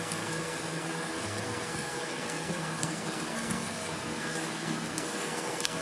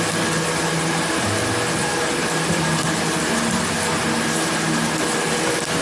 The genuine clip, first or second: second